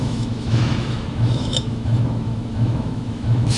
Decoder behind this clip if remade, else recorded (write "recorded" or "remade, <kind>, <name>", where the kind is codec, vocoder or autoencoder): remade, autoencoder, DAC-VAE